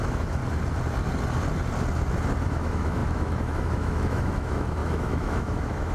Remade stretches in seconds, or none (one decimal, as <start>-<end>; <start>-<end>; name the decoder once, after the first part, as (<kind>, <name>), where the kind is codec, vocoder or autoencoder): 0.0-0.4 (autoencoder, DAC-VAE); 2.5-5.9